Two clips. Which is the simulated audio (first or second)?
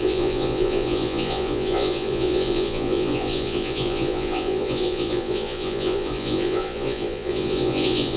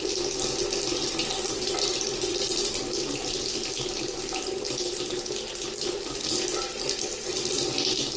first